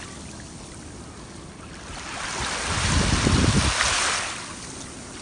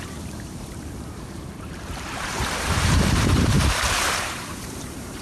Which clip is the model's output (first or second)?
second